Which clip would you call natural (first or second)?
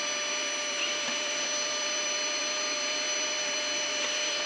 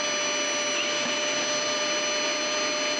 second